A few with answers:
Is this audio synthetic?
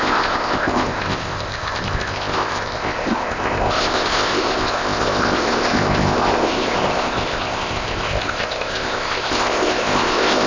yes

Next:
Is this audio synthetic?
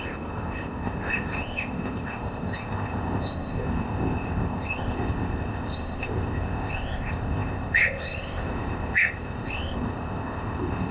yes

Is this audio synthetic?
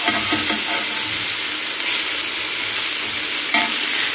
no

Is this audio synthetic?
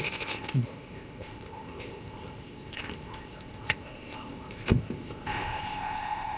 yes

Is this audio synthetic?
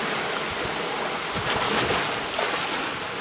no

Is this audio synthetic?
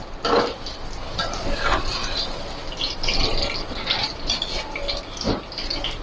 no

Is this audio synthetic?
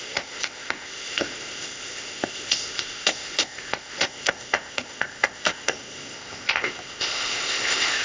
yes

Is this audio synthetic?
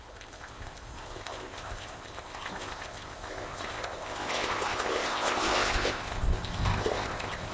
yes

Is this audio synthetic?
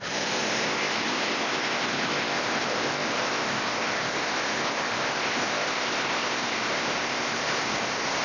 yes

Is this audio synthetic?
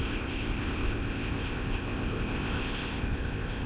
yes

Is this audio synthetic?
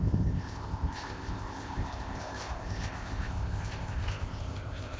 yes